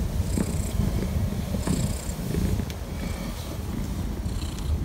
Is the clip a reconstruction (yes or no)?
no